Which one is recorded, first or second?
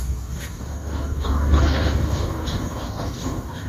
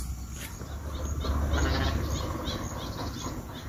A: second